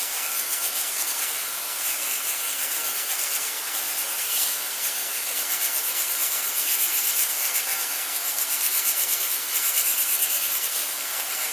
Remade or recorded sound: remade